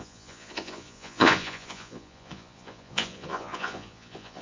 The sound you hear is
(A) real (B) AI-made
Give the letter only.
B